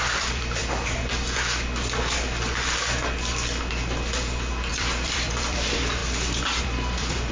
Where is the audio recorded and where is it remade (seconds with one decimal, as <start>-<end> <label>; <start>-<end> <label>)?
0.0-0.6 remade; 0.6-4.7 recorded; 4.7-6.0 remade; 6.0-6.6 recorded; 6.6-7.3 remade